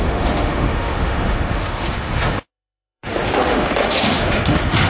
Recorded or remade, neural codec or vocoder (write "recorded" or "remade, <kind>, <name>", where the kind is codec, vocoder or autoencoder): remade, autoencoder, DAC-VAE